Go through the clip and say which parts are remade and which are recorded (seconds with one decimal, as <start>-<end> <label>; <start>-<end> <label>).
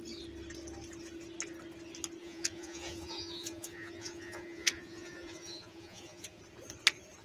0.0-2.2 recorded; 2.2-6.4 remade; 6.4-7.2 recorded